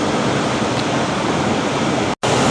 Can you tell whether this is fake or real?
real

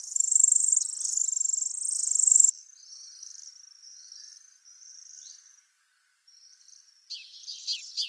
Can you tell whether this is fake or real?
real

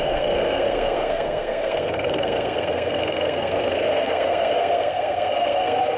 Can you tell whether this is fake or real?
fake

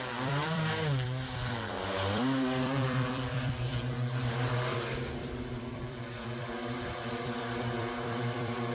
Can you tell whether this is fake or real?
fake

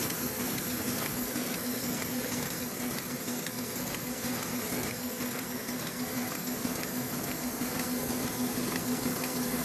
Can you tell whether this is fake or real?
fake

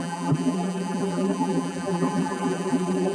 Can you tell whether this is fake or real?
fake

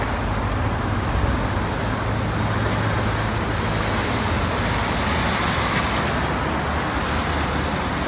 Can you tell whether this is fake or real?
real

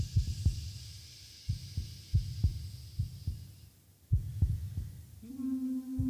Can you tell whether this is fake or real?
real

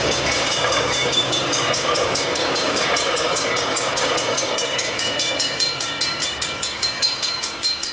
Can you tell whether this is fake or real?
fake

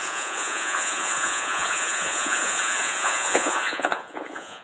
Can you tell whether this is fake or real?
fake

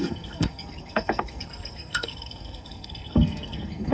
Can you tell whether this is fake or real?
fake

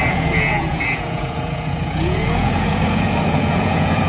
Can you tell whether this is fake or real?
fake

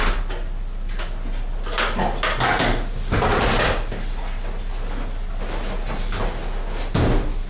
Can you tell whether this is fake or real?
real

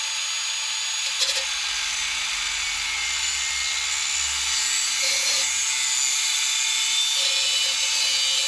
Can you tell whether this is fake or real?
real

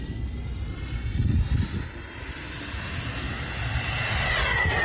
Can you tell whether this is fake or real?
real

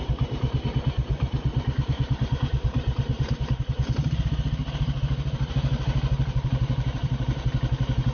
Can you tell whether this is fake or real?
fake